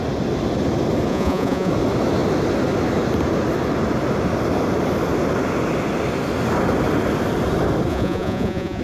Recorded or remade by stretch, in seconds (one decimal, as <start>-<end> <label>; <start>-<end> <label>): 0.0-1.1 recorded; 1.1-1.7 remade; 1.7-7.9 recorded; 7.9-8.8 remade